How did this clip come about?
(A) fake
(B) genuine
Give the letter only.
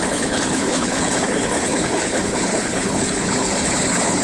A